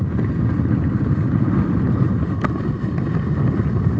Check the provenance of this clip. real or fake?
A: real